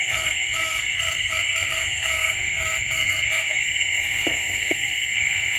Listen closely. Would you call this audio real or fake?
fake